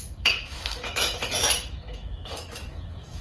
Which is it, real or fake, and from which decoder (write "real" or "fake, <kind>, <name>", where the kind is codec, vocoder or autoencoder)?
fake, autoencoder, DAC-VAE